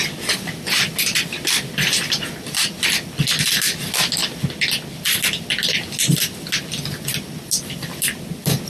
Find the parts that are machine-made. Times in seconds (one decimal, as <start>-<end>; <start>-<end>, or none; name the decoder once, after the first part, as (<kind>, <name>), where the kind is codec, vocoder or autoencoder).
none

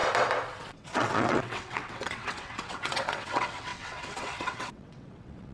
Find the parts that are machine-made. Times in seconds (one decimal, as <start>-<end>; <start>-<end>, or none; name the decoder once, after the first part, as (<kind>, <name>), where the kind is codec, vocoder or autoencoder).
0.7-5.5 (vocoder, WaveNeXt)

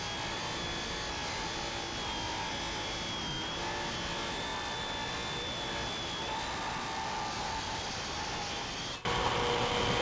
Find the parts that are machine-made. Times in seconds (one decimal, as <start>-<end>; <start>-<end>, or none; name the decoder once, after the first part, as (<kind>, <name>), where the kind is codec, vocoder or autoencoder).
none

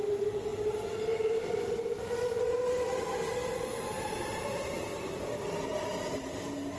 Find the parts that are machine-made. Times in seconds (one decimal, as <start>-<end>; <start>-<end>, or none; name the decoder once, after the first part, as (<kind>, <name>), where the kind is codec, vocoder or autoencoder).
3.4-4.9 (vocoder, BigVGAN v2)

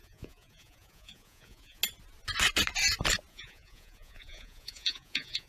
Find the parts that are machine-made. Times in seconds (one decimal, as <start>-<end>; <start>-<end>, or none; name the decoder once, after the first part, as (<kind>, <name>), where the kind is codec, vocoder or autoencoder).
0.0-1.8 (vocoder, Vocos); 3.3-5.5

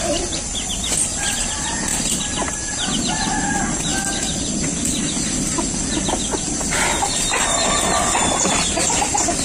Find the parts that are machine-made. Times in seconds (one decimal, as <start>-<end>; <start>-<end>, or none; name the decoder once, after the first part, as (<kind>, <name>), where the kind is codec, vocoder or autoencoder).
none